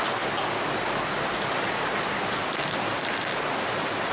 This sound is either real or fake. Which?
real